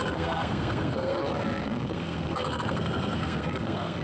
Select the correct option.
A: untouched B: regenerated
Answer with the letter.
B